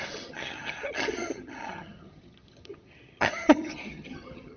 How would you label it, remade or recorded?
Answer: remade